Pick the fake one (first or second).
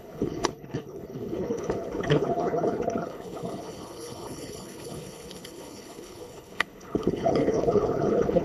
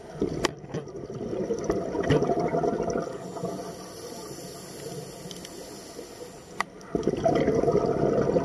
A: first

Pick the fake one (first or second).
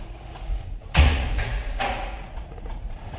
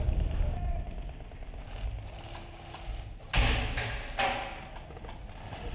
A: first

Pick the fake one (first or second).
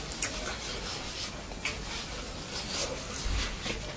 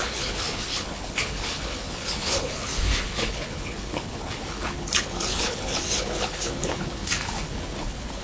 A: second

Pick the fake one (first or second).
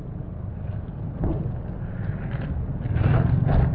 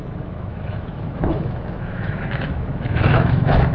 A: second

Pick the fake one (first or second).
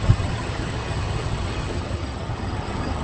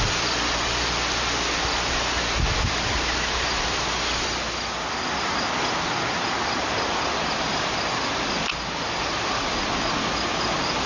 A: first